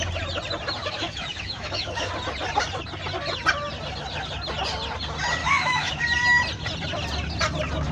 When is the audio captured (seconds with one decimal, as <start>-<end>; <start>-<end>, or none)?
0.0-0.8; 2.1-5.4; 6.0-7.9